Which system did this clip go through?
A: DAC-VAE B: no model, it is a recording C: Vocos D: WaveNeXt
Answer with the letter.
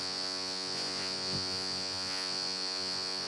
C